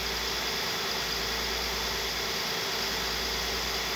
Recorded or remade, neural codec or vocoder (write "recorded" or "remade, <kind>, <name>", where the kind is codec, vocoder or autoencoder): recorded